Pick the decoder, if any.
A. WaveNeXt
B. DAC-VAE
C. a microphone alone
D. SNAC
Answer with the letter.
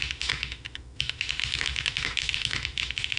B